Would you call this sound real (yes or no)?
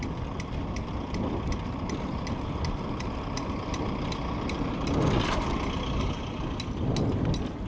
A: yes